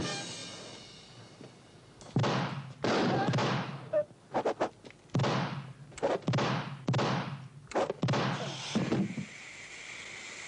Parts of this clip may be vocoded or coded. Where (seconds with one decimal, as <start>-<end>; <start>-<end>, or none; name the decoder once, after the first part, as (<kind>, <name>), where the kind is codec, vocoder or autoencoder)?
none